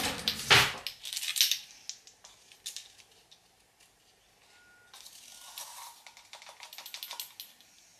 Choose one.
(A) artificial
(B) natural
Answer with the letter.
B